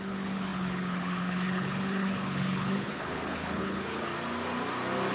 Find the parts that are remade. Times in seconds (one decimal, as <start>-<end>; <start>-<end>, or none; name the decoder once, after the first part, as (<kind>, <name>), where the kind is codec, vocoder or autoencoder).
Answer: 0.0-4.1 (codec, HILCodec)